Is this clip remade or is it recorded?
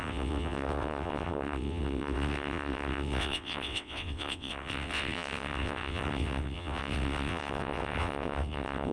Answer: remade